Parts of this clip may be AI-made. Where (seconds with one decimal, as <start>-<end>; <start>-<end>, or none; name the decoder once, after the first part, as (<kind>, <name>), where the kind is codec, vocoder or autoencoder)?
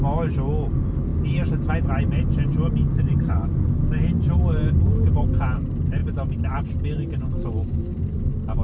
none